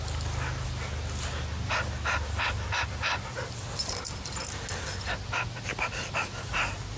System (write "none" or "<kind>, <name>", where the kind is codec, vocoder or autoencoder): none